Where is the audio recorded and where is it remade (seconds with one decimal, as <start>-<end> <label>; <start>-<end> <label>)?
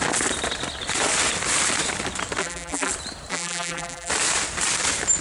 0.0-2.4 recorded; 2.4-2.9 remade; 2.9-3.3 recorded; 3.3-4.1 remade; 4.1-5.2 recorded